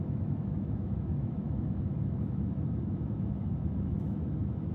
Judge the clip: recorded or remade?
remade